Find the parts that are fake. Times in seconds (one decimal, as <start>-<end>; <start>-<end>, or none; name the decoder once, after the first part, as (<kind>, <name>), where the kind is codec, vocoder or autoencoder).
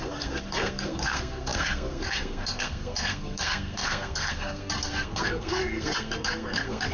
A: 0.0-6.9 (codec, SNAC)